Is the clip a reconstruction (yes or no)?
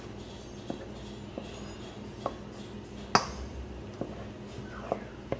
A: no